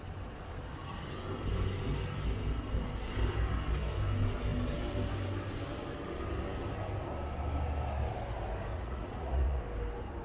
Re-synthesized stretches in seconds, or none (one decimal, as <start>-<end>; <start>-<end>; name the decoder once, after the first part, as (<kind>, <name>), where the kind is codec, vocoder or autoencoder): 8.7-9.6 (vocoder, Vocos)